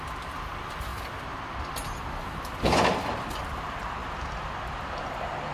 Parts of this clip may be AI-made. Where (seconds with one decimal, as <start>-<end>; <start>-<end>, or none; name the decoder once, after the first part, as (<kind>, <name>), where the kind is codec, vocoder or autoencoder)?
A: 0.9-1.7 (vocoder, BigVGAN v2)